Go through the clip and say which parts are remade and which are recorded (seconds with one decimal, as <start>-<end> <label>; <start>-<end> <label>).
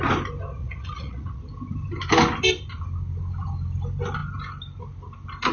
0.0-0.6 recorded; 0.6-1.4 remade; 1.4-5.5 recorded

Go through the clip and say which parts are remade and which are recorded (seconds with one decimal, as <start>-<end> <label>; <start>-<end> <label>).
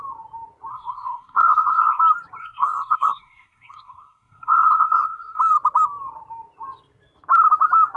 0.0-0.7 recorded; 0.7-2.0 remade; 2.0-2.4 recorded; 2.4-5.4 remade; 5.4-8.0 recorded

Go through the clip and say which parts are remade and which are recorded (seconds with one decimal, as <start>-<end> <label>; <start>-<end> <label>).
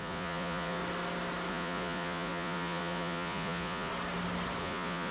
0.0-0.8 remade; 0.8-1.5 recorded; 1.5-3.9 remade; 3.9-4.6 recorded; 4.6-5.1 remade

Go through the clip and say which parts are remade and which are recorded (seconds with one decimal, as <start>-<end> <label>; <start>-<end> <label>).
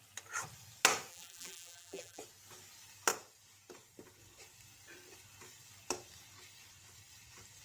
0.0-1.1 recorded; 1.1-2.2 remade; 2.2-7.6 recorded